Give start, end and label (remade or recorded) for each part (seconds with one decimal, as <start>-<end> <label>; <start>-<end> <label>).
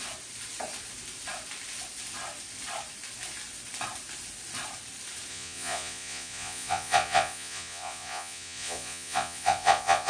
0.0-5.3 recorded; 5.3-10.1 remade